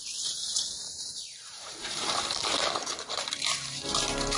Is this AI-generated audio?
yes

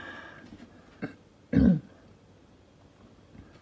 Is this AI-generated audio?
no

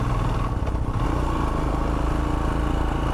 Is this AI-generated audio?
no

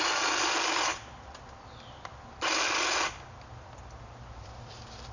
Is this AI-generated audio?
no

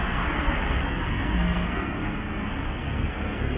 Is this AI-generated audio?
yes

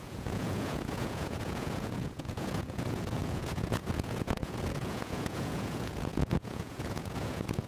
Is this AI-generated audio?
yes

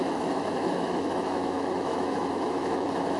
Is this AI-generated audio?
yes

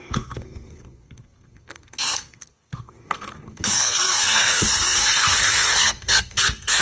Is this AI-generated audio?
yes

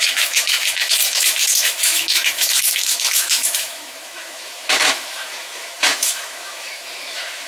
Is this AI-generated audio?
yes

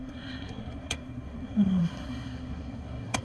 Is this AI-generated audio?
yes